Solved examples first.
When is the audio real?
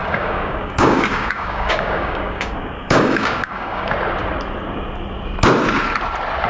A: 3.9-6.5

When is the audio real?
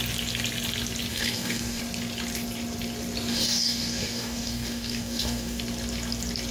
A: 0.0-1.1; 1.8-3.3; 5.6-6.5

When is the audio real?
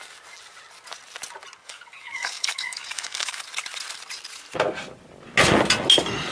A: 0.0-1.6; 3.4-6.3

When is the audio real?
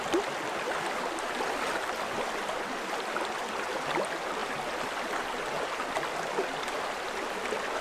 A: 0.0-7.8